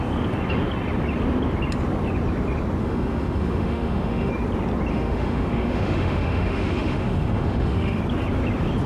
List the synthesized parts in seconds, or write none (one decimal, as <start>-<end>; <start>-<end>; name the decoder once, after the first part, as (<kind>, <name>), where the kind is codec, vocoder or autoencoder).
2.8-4.3 (autoencoder, DAC-VAE); 4.9-8.0